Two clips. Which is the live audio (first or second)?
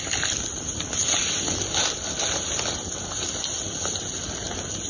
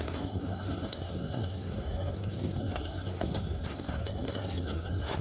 first